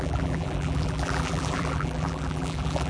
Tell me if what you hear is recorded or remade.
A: remade